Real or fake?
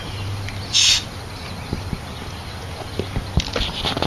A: real